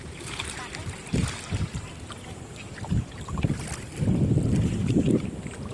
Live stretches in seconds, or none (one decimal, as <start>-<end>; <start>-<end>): 1.2-2.2; 2.7-4.7